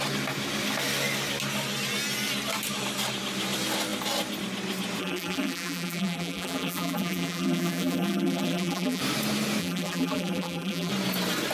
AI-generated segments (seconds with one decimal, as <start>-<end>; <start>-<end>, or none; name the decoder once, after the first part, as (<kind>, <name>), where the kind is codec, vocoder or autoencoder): 5.0-9.0 (vocoder, BigVGAN v2); 9.6-10.9